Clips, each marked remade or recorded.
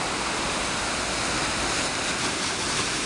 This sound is recorded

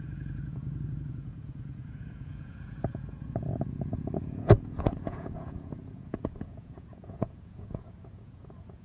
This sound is remade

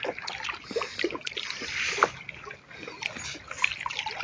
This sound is recorded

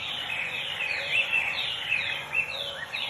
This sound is remade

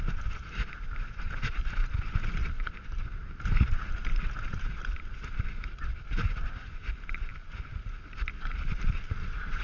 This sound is recorded